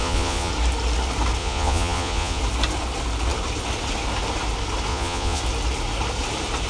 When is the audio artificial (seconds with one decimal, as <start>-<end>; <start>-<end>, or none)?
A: 0.0-0.5; 1.4-2.4; 4.9-5.4